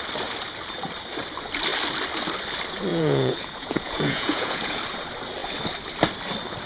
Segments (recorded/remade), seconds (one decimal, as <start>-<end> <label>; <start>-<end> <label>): 0.0-2.9 recorded; 2.9-4.8 remade; 4.8-6.7 recorded